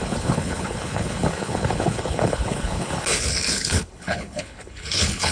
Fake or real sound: fake